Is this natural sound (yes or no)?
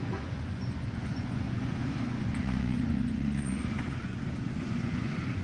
no